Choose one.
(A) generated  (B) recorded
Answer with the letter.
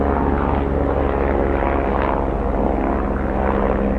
B